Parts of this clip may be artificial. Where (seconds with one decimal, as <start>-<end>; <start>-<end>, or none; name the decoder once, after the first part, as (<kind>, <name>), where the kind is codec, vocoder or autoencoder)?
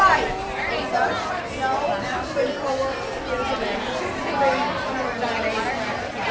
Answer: none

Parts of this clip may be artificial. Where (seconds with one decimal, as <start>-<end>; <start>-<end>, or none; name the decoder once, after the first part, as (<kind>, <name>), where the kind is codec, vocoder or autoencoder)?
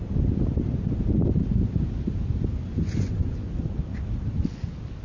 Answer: 2.7-3.5 (vocoder, Vocos)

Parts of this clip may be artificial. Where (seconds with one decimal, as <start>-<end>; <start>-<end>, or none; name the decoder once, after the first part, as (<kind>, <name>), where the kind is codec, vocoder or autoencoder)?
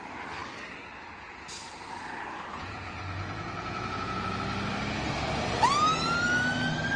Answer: 2.5-4.3 (vocoder, Vocos)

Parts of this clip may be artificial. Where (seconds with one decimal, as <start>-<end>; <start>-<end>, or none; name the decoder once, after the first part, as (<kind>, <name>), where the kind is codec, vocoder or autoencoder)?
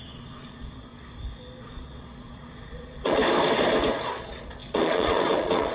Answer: 0.0-0.9 (vocoder, Vocos); 1.6-3.2; 4.1-5.7